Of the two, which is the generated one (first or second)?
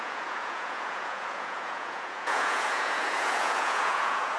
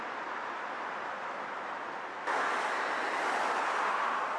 first